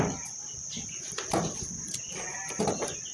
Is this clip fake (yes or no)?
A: no